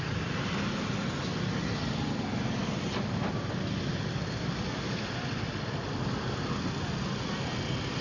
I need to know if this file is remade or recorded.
recorded